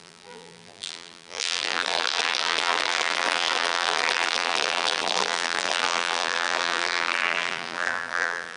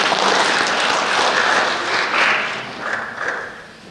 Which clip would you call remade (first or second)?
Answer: first